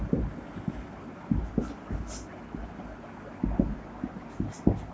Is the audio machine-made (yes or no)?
no